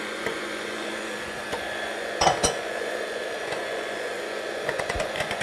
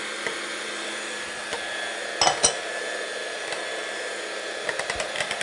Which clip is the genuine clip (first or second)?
second